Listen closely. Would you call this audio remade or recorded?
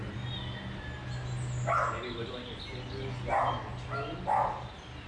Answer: recorded